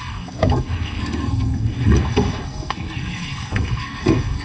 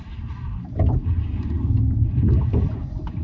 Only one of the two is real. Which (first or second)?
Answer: second